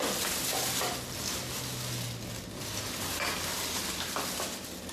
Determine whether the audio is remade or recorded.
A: recorded